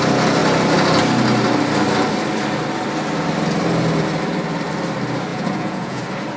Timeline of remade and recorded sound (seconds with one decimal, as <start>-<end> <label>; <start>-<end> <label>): 0.0-5.3 recorded; 5.3-6.0 remade; 6.0-6.4 recorded